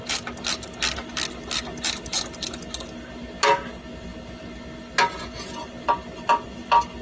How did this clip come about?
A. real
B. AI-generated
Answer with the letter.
A